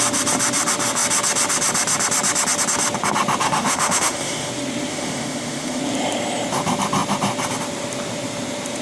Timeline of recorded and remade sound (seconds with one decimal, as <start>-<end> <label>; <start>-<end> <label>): 0.0-3.4 recorded; 3.4-4.5 remade; 4.5-4.9 recorded; 4.9-5.8 remade; 5.8-8.8 recorded